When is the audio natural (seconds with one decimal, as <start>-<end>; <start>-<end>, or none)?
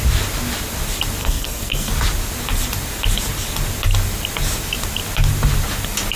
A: 0.0-1.2; 1.9-6.2